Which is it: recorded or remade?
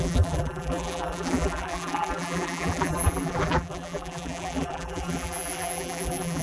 remade